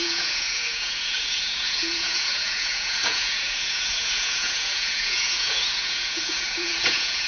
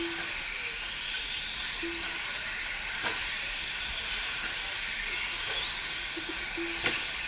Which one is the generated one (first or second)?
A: first